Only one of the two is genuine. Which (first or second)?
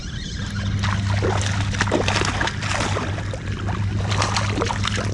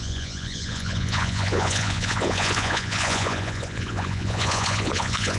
first